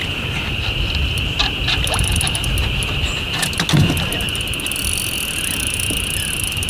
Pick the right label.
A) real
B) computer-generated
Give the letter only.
A